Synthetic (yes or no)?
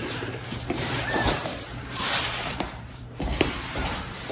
yes